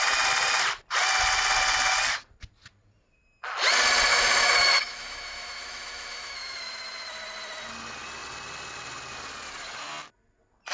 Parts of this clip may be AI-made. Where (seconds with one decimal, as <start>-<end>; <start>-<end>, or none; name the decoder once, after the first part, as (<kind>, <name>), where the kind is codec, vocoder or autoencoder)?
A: 4.1-6.7 (autoencoder, DAC-VAE)